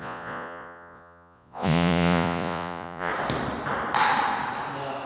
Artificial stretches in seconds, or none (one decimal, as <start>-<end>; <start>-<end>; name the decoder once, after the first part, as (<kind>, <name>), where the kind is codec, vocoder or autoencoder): 0.0-3.1 (vocoder, Vocos)